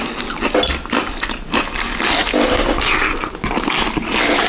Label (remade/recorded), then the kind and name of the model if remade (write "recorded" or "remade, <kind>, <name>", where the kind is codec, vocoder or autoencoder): recorded